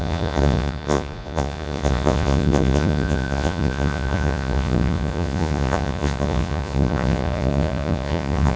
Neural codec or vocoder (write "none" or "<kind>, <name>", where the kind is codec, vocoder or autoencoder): vocoder, Vocos